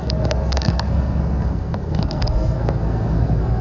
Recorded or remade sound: remade